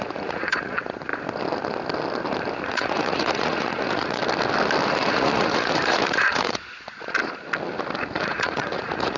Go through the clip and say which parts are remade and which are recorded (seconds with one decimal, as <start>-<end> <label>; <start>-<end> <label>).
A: 0.0-1.1 remade; 1.1-2.7 recorded; 2.7-4.2 remade; 4.2-4.9 recorded; 4.9-7.2 remade; 7.2-8.1 recorded; 8.1-9.2 remade